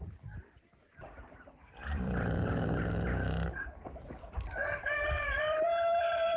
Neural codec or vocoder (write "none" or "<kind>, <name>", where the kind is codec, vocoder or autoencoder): vocoder, BigVGAN v2